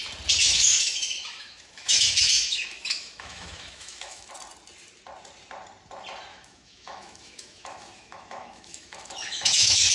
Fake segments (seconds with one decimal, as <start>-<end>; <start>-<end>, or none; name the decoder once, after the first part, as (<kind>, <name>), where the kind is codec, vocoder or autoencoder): 0.4-4.3 (autoencoder, DAC-VAE); 6.3-9.9